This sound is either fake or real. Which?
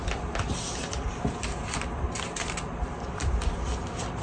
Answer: real